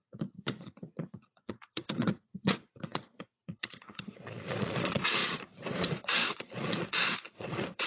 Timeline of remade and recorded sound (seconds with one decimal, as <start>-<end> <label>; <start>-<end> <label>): 0.0-7.9 remade